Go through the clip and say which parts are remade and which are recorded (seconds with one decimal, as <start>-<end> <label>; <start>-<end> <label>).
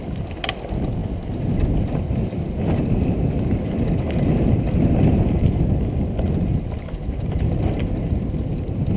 0.0-9.0 recorded